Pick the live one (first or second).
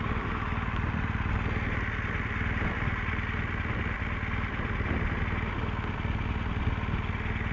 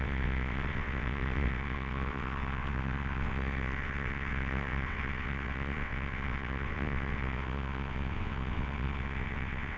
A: first